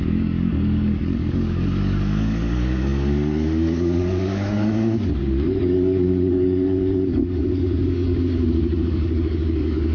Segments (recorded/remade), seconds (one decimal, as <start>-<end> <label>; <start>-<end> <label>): 0.0-9.9 remade